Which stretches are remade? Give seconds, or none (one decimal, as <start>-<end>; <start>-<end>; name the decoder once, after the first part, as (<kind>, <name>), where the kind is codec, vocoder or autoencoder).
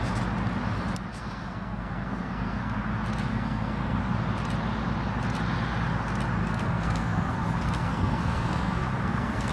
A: 1.1-2.8 (codec, SNAC); 3.3-4.0; 6.4-9.5